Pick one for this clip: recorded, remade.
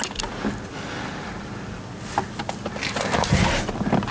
recorded